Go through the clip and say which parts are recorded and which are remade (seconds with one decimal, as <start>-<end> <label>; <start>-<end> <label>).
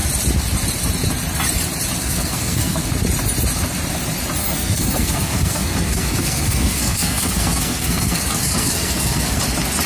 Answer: 0.0-2.0 recorded; 2.0-2.9 remade; 2.9-4.4 recorded; 4.4-9.4 remade; 9.4-9.9 recorded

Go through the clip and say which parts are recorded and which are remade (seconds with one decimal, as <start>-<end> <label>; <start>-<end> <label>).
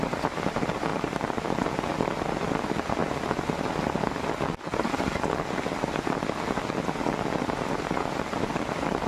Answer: 0.0-9.1 recorded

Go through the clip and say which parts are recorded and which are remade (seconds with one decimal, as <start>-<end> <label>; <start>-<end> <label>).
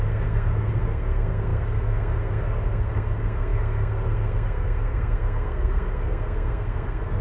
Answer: 0.0-7.2 remade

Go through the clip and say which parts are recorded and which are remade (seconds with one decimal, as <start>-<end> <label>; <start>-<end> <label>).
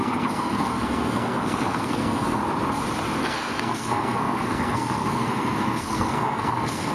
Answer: 0.0-2.4 remade; 2.4-3.2 recorded; 3.2-6.9 remade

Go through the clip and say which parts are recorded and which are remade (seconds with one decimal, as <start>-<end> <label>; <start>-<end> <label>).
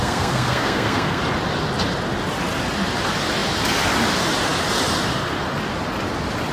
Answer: 0.0-1.2 remade; 1.2-6.5 recorded